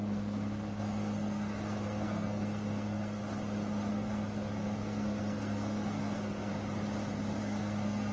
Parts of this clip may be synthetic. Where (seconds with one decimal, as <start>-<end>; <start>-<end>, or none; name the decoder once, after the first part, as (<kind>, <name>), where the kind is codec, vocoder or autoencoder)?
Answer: 0.0-3.2 (codec, SNAC); 3.9-6.5; 7.4-8.1